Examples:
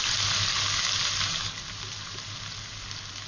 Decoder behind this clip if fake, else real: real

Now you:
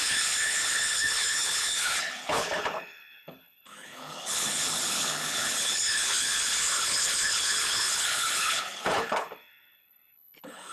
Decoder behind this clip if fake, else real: fake, codec, HILCodec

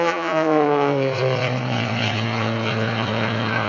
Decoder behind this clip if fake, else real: fake, vocoder, Vocos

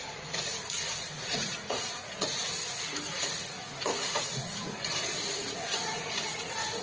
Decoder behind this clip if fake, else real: fake, vocoder, Vocos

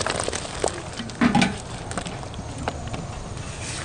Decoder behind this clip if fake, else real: real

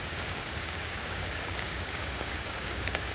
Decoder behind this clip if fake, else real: fake, codec, DAC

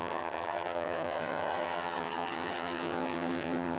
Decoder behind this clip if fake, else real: fake, vocoder, HiFi-GAN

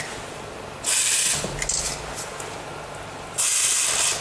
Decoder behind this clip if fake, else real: real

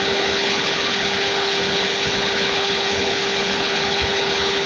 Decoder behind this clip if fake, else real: fake, codec, HILCodec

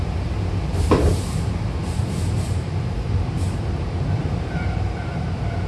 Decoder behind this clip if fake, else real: fake, vocoder, BigVGAN v2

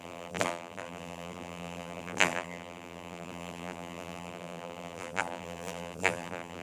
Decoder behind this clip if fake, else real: fake, vocoder, BigVGAN v2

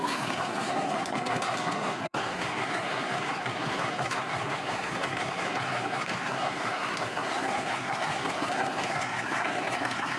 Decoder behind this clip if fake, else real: fake, codec, SNAC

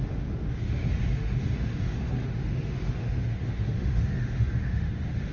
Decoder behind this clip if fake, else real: fake, autoencoder, DAC-VAE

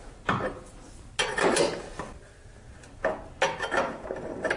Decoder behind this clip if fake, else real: real